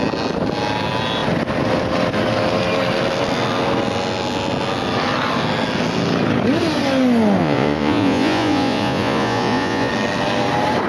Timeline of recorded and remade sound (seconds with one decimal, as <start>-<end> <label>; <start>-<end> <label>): 0.0-7.4 recorded; 7.4-9.9 remade; 9.9-10.9 recorded